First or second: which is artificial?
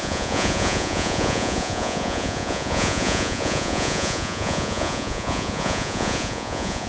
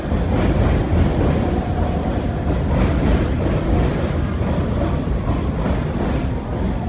first